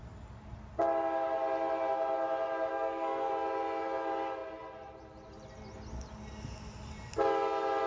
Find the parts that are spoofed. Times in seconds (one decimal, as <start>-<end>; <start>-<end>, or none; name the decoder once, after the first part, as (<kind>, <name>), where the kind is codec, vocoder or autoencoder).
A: 2.7-3.3 (codec, SNAC)